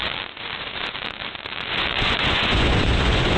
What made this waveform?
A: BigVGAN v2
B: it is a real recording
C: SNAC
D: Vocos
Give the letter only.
D